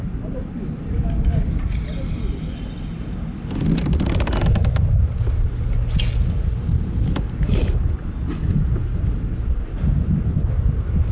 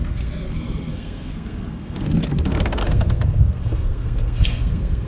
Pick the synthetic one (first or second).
second